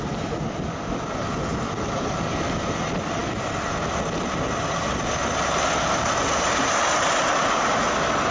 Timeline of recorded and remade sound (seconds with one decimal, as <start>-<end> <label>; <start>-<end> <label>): 0.0-8.3 recorded